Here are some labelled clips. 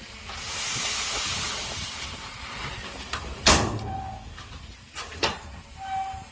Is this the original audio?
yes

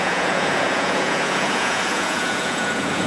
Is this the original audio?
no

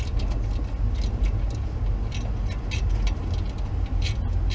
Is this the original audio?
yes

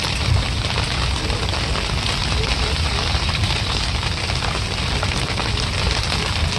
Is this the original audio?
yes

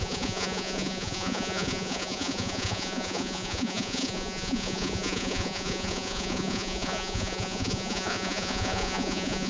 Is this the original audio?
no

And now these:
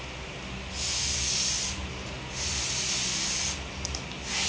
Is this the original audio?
yes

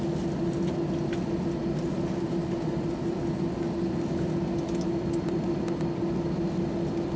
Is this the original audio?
yes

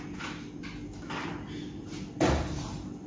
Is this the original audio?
yes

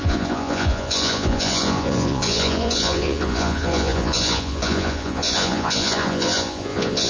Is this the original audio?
no